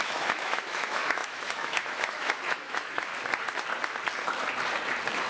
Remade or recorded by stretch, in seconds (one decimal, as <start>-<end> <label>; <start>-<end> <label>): 0.0-3.1 remade; 3.1-5.3 recorded